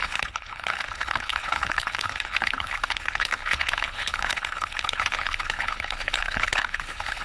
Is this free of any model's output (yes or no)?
no